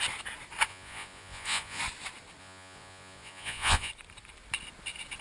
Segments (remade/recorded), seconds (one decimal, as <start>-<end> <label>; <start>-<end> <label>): 0.0-0.7 recorded; 0.7-1.8 remade; 1.8-2.4 recorded; 2.4-3.9 remade; 3.9-5.2 recorded